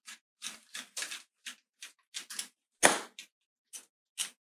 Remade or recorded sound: recorded